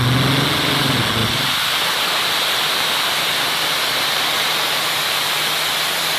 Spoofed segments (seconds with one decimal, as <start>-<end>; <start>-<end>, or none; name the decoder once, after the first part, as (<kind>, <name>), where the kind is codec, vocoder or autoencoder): 1.2-4.9 (vocoder, BigVGAN v2)

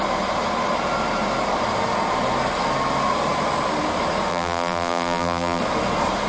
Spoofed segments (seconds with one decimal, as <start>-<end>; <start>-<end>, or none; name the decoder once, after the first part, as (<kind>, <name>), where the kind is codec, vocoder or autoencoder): 4.3-5.6 (vocoder, BigVGAN v2)

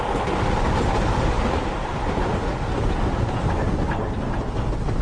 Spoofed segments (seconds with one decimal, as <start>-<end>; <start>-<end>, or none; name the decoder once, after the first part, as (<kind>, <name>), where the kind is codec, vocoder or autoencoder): none